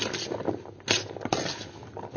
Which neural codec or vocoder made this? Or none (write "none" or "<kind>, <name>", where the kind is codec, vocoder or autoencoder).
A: none